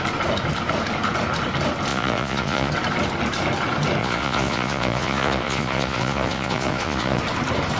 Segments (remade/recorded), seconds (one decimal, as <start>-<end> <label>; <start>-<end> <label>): 0.0-1.9 recorded; 1.9-2.7 remade; 2.7-4.0 recorded; 4.0-7.2 remade; 7.2-7.8 recorded